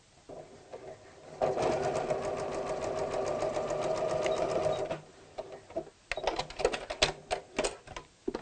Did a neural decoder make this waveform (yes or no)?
no